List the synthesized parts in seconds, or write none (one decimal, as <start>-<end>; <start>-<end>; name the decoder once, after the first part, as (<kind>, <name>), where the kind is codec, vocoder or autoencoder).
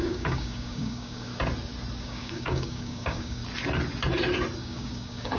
0.0-1.3 (codec, DAC); 2.0-3.4; 4.6-5.4